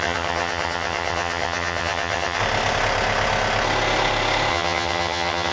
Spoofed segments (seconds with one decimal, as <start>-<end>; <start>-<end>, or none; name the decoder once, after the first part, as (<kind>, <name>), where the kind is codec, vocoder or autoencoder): 0.0-2.4 (vocoder, HiFi-GAN); 4.5-5.5